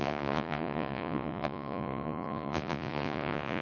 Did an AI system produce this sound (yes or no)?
yes